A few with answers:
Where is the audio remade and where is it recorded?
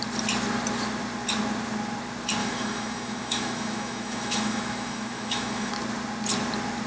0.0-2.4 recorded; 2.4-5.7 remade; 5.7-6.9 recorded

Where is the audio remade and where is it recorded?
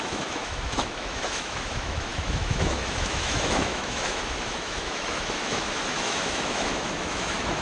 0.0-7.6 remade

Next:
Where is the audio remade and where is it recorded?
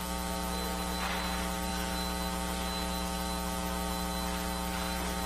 0.0-5.3 recorded